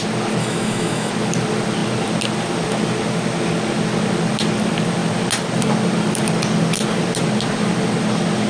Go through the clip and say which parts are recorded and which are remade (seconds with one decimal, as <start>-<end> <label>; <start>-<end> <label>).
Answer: 0.0-0.4 recorded; 0.4-1.1 remade; 1.1-8.5 recorded